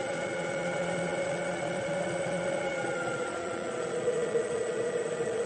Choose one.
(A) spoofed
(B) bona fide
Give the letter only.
A